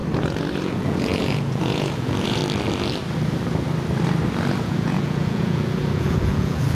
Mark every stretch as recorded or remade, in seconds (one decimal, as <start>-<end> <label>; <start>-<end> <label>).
0.0-0.6 recorded; 0.6-2.4 remade; 2.4-4.6 recorded; 4.6-6.7 remade